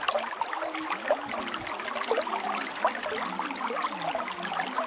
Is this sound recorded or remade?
recorded